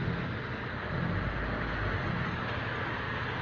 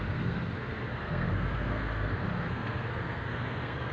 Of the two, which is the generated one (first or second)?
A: second